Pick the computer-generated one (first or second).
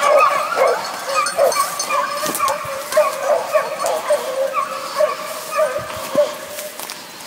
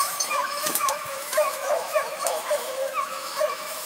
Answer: second